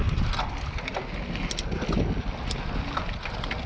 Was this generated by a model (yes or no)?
no